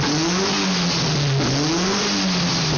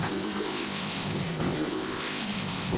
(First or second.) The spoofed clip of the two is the second